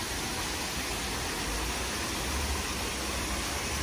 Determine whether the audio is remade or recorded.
recorded